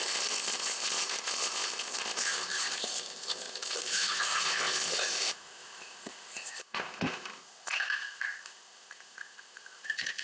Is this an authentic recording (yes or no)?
no